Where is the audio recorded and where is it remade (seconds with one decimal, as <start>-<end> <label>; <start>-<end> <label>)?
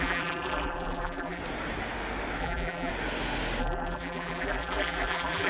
0.0-1.4 remade; 1.4-2.4 recorded; 2.4-2.9 remade; 2.9-3.6 recorded; 3.6-5.5 remade